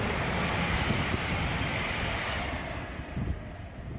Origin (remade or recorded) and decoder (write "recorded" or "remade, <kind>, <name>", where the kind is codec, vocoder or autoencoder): recorded